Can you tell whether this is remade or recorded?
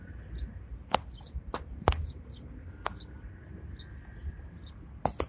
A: recorded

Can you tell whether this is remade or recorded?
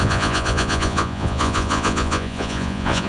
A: remade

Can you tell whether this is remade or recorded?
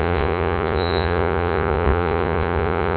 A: remade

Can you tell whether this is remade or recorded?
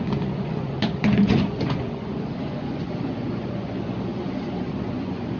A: remade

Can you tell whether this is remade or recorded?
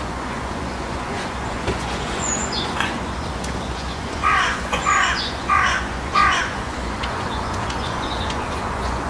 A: remade